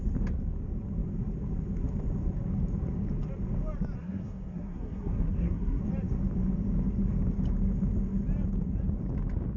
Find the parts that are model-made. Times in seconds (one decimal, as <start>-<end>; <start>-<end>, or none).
4.0-5.8